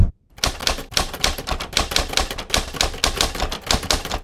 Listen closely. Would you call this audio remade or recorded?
recorded